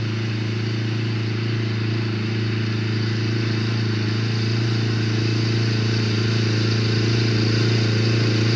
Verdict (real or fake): real